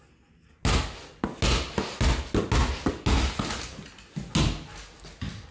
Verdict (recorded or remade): recorded